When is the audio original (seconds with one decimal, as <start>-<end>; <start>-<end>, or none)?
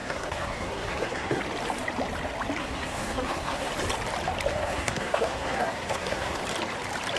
1.4-2.6; 3.7-4.5; 6.4-7.2